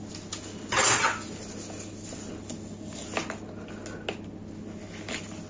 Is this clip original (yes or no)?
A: yes